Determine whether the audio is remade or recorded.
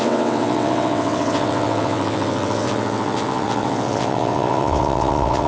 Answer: remade